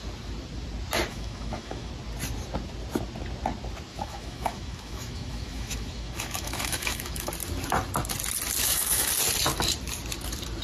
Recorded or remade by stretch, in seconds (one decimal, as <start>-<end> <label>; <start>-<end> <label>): 0.0-1.1 recorded; 1.1-1.9 remade; 1.9-3.9 recorded; 3.9-7.3 remade; 7.3-8.6 recorded; 8.6-9.1 remade; 9.1-10.6 recorded